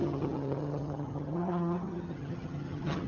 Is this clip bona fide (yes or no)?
no